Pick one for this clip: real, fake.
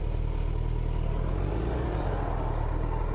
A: real